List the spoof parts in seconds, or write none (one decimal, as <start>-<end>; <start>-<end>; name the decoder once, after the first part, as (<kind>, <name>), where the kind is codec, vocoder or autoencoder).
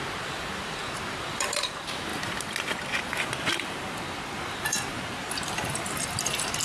0.0-2.1 (vocoder, BigVGAN v2); 3.3-6.6